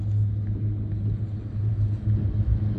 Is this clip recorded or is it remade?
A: recorded